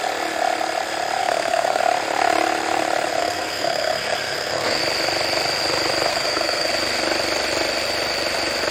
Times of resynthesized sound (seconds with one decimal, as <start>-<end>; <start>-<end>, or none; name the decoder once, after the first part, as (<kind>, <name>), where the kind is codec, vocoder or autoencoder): 1.2-1.8 (codec, SNAC); 3.2-4.8; 6.1-6.7